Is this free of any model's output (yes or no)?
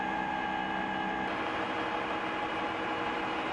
yes